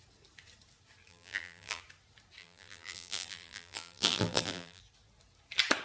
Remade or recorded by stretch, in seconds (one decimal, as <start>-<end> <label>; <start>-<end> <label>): 0.0-1.1 recorded; 1.1-1.8 remade; 1.8-2.4 recorded; 2.4-4.8 remade; 4.8-5.8 recorded